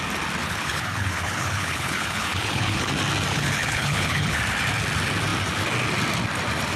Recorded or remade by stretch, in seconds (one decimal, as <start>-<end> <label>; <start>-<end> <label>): 0.0-0.4 recorded; 0.4-2.9 remade; 2.9-3.3 recorded; 3.3-4.4 remade; 4.4-6.8 recorded